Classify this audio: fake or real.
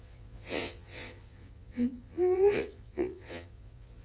fake